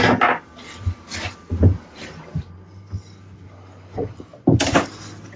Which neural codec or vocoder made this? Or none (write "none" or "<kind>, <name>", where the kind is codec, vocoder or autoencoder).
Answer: none